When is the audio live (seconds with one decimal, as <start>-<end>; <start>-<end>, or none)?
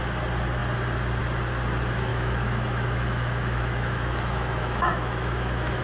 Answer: 0.0-2.1